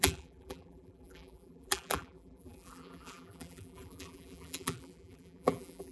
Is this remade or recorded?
remade